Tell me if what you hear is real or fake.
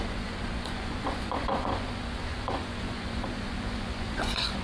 fake